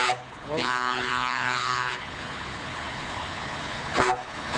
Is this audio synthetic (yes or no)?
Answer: yes